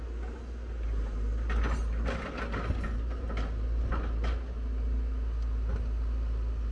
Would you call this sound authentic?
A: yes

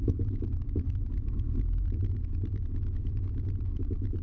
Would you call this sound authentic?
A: no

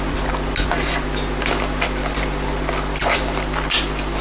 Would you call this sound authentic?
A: yes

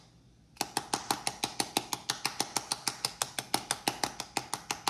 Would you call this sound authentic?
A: yes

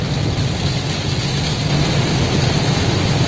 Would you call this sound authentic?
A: yes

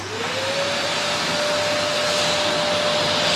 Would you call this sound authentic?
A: yes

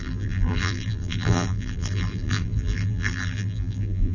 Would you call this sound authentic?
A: no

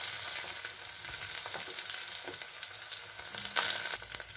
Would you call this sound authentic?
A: yes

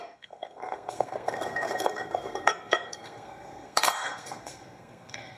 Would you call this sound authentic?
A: no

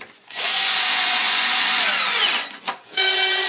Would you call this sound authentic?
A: no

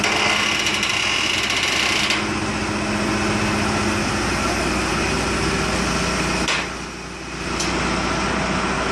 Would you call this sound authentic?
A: yes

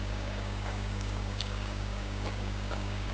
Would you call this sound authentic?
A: no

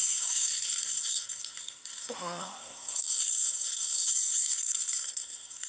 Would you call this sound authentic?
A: no